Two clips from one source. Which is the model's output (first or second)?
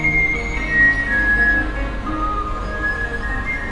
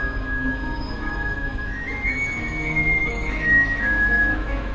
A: second